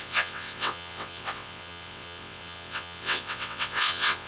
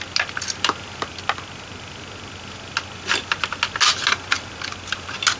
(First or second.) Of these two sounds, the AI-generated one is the first